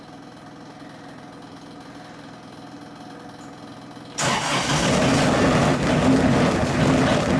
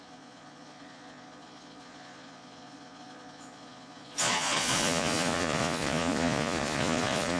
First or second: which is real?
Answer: first